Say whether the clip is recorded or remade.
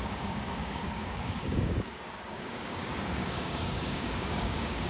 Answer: remade